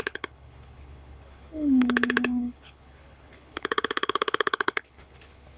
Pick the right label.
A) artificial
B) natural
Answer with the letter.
A